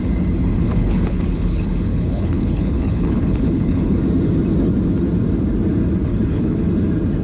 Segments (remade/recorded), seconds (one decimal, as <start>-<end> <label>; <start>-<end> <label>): 0.0-0.5 recorded; 0.5-4.0 remade; 4.0-6.1 recorded; 6.1-6.7 remade; 6.7-7.2 recorded